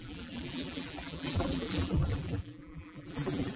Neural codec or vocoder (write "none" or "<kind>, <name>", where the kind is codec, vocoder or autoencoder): vocoder, BigVGAN v2